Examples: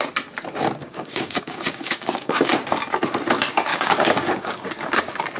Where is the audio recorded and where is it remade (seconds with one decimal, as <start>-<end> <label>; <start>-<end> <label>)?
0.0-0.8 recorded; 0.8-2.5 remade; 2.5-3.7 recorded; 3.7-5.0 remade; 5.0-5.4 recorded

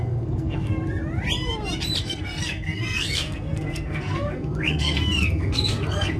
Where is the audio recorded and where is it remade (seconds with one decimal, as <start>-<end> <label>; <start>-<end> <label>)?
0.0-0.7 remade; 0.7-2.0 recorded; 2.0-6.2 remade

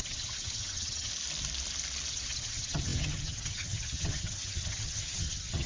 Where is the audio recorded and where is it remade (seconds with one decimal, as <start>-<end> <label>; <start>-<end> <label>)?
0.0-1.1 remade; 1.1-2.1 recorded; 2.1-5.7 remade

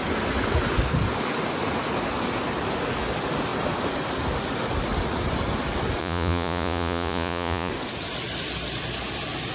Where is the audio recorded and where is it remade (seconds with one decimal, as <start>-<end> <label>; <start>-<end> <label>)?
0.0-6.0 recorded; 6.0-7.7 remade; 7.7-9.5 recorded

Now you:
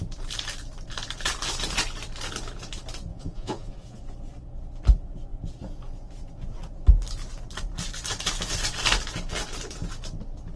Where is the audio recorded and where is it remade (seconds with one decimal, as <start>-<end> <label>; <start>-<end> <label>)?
0.0-3.1 recorded; 3.1-4.0 remade; 4.0-10.6 recorded

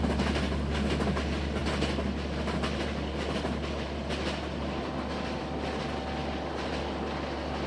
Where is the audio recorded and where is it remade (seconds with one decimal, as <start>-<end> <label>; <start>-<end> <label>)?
0.0-7.7 recorded

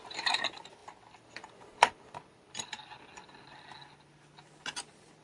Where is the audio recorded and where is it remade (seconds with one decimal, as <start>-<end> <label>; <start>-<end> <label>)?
0.0-0.8 recorded; 0.8-2.9 remade; 2.9-5.2 recorded

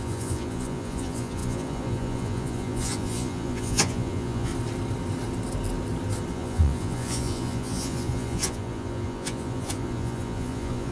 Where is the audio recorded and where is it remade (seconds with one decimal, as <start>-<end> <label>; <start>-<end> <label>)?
0.0-4.5 remade; 4.5-6.3 recorded; 6.3-10.9 remade